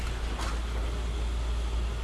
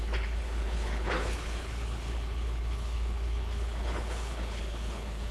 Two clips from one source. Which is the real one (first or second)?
first